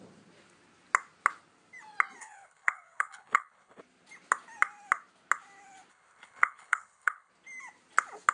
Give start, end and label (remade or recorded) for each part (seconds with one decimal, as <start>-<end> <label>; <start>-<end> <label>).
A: 0.0-2.2 recorded; 2.2-3.8 remade; 3.8-5.9 recorded; 5.9-7.3 remade; 7.3-8.3 recorded